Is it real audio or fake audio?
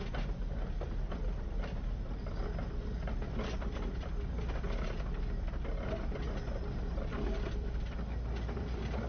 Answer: real